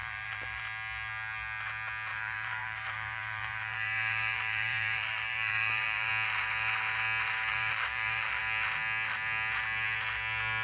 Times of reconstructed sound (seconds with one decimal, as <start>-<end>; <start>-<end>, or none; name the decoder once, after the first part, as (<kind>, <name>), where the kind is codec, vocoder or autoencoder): 0.0-0.6 (vocoder, BigVGAN v2); 2.1-6.1; 7.5-8.4